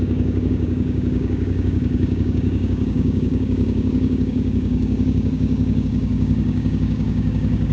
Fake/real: fake